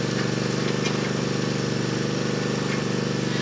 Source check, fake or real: real